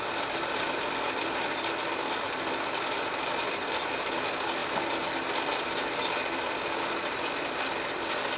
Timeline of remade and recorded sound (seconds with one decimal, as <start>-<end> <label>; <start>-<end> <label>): 0.0-8.4 recorded